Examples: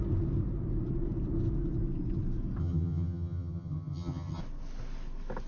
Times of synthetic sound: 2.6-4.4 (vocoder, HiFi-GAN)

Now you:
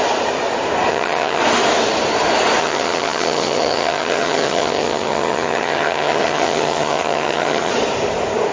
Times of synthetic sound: 0.9-1.4 (vocoder, HiFi-GAN); 2.6-7.7

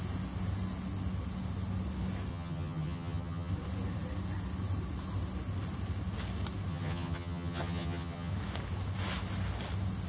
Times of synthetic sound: 2.3-3.5 (vocoder, HiFi-GAN); 6.7-8.3

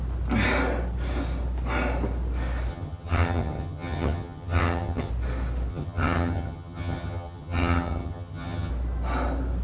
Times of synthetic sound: 2.7-5.1 (vocoder, HiFi-GAN); 5.7-8.7

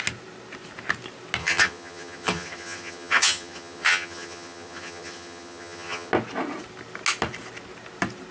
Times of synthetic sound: 1.4-6.1 (vocoder, HiFi-GAN)

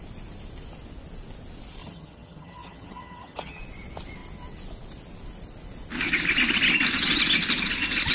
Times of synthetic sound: 1.8-3.6 (vocoder, HiFi-GAN)

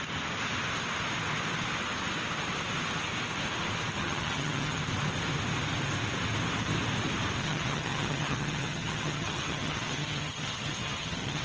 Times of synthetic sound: 4.0-4.8 (vocoder, HiFi-GAN); 7.4-11.4